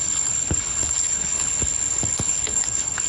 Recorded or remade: remade